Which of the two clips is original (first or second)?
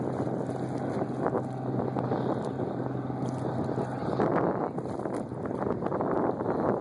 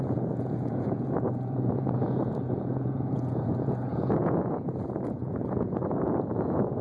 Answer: first